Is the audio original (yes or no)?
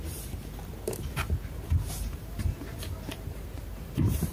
no